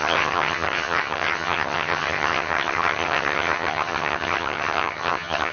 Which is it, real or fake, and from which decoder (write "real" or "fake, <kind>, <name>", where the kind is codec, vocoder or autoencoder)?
fake, vocoder, HiFi-GAN